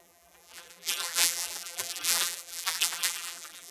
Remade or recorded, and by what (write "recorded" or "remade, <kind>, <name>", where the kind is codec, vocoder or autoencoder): remade, vocoder, BigVGAN v2